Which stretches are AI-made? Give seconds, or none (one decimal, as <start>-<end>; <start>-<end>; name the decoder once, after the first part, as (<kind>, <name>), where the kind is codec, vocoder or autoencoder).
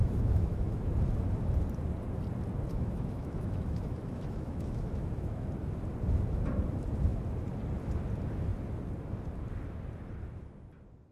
0.0-0.8 (autoencoder, DAC-VAE); 2.7-5.5